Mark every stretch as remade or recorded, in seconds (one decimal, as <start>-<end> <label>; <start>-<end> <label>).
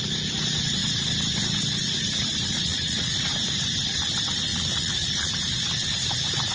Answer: 0.0-2.5 recorded; 2.5-3.3 remade; 3.3-4.5 recorded; 4.5-5.4 remade; 5.4-6.5 recorded